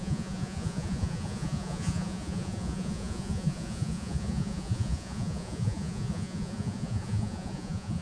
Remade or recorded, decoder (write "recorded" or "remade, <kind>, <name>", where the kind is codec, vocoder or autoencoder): remade, vocoder, Vocos